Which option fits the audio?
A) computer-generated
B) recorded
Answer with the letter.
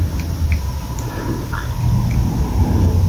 B